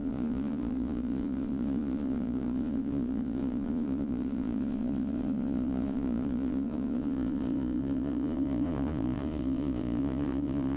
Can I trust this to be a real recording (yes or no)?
no